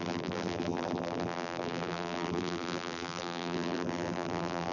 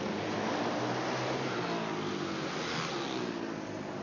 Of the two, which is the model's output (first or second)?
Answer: first